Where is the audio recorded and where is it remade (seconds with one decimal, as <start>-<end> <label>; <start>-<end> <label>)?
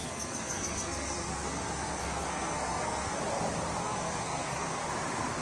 0.0-3.2 remade; 3.2-3.8 recorded; 3.8-4.9 remade; 4.9-5.4 recorded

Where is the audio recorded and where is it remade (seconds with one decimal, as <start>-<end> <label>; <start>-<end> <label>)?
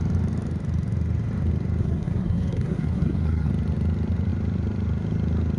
0.0-1.8 recorded; 1.8-3.5 remade; 3.5-5.6 recorded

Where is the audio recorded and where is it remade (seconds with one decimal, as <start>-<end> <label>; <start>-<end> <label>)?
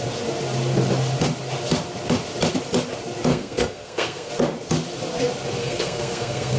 0.0-3.3 recorded; 3.3-4.3 remade; 4.3-5.6 recorded; 5.6-6.6 remade